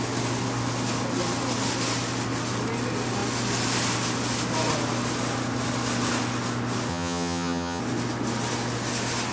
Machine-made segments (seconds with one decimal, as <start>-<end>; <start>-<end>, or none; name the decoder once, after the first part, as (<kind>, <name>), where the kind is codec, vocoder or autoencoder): 6.9-7.8 (vocoder, HiFi-GAN)